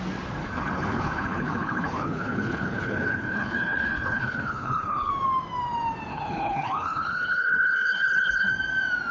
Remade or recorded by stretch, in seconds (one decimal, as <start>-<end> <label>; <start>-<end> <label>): 0.0-0.4 recorded; 0.4-5.1 remade; 5.1-6.1 recorded; 6.1-8.5 remade; 8.5-9.1 recorded